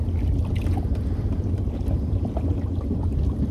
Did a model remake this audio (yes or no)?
no